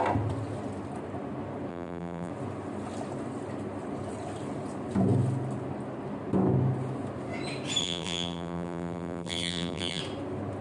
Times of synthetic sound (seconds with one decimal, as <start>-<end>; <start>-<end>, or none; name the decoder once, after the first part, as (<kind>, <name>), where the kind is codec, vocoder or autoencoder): 1.7-2.3 (vocoder, BigVGAN v2); 7.8-10.0